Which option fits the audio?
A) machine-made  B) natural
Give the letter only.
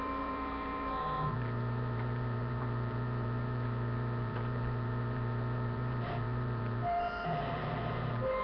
A